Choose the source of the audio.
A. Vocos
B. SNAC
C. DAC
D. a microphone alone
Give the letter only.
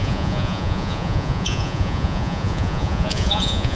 A